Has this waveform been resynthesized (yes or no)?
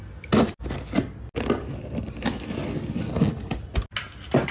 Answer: no